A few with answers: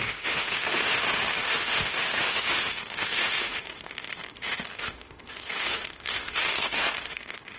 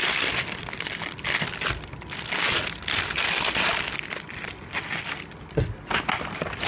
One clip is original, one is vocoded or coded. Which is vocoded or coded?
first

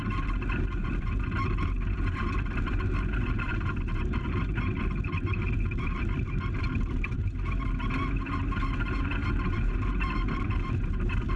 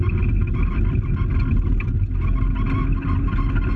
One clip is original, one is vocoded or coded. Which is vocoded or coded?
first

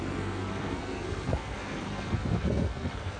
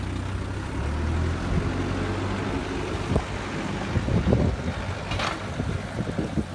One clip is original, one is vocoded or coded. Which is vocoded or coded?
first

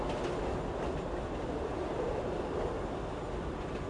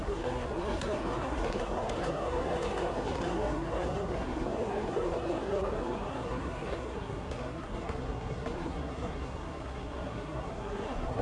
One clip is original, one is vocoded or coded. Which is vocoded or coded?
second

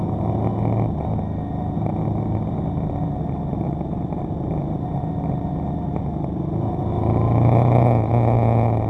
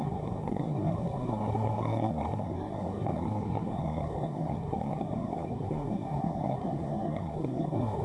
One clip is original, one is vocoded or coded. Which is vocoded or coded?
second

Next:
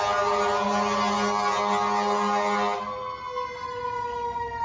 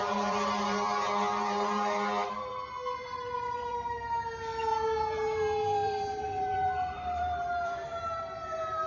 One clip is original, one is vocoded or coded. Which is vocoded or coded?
second